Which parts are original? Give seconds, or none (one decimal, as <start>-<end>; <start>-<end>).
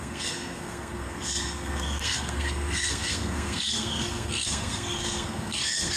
none